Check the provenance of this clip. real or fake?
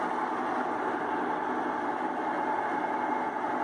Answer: real